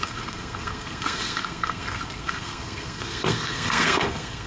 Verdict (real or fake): fake